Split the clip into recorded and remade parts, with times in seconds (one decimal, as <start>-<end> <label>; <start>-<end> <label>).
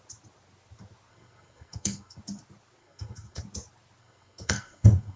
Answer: 0.0-1.1 recorded; 1.1-2.2 remade; 2.2-2.8 recorded; 2.8-3.4 remade; 3.4-4.0 recorded; 4.0-5.2 remade